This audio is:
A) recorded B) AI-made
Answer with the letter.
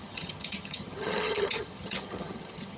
B